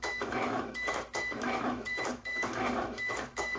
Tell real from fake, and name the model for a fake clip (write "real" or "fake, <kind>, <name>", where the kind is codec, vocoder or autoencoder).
fake, autoencoder, DAC-VAE